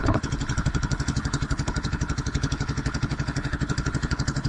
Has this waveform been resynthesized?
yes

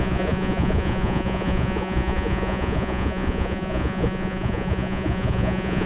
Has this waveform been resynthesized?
yes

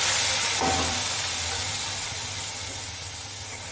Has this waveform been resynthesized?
no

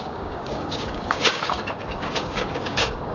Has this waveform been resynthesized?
yes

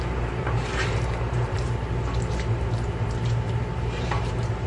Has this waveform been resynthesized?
yes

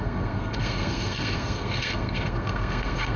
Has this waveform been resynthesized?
yes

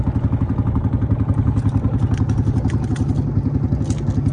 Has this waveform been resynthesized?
no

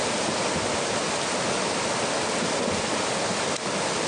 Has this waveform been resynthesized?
no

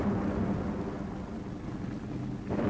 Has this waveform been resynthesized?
no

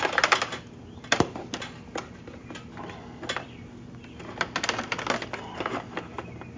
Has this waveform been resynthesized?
no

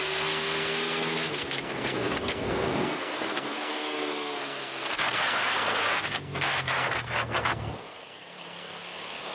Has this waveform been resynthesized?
yes